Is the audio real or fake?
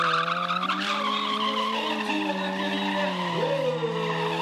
real